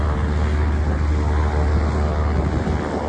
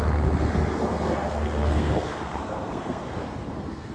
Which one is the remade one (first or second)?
second